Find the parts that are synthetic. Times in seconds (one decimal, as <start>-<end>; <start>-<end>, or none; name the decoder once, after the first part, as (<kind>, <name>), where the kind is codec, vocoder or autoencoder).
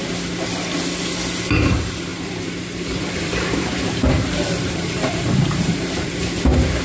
2.1-6.1 (vocoder, BigVGAN v2)